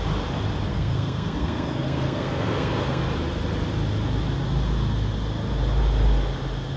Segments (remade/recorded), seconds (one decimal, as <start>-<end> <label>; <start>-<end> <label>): 0.0-0.7 recorded; 0.7-3.0 remade; 3.0-6.8 recorded